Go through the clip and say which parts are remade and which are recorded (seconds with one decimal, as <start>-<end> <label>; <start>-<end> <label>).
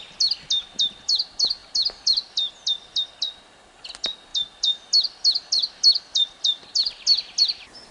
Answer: 0.0-7.9 recorded